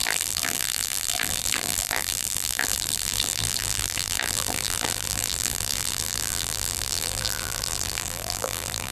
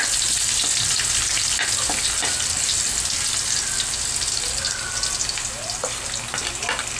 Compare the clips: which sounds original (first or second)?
second